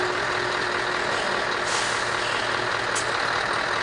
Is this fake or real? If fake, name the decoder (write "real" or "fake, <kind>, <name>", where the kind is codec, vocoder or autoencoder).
real